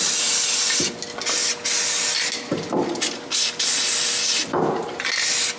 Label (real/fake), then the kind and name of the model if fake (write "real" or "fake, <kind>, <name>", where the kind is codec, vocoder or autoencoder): real